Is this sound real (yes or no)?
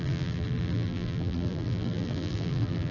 no